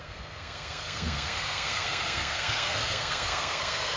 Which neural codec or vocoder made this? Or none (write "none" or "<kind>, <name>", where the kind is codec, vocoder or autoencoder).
codec, SNAC